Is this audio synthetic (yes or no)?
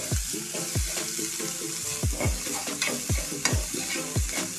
no